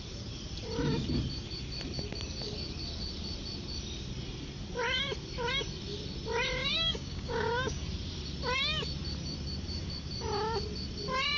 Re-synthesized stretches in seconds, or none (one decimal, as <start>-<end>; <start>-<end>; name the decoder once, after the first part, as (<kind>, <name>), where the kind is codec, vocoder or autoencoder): 6.7-7.8 (codec, DAC)